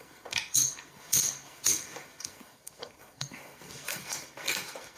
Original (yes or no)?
no